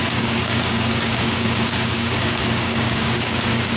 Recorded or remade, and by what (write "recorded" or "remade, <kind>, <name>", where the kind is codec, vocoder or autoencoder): remade, codec, DAC